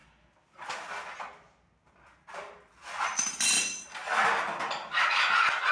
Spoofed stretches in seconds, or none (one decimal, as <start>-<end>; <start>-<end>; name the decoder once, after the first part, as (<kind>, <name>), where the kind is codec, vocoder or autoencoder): none